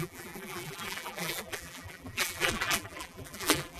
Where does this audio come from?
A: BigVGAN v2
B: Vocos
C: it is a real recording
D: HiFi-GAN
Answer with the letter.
A